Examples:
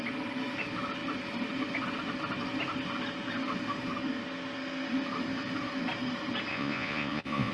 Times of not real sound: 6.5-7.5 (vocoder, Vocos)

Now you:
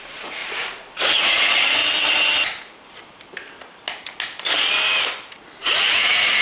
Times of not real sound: 0.0-1.8 (vocoder, Vocos); 5.6-6.4

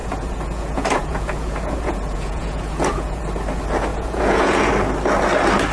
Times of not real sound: 0.0-3.2 (vocoder, Vocos); 3.9-4.7

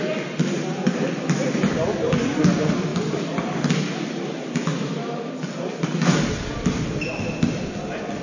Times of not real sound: none